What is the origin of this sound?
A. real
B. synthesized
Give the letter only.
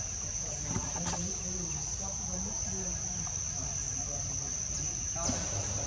A